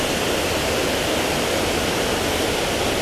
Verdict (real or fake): real